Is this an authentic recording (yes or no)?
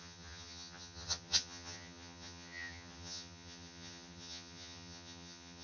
no